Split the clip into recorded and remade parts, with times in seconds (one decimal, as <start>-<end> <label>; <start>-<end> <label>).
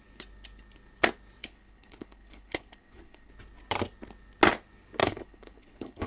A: 0.0-1.4 recorded; 1.4-3.3 remade; 3.3-5.0 recorded; 5.0-6.1 remade